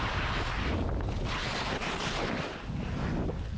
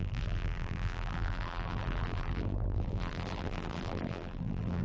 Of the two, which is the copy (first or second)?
second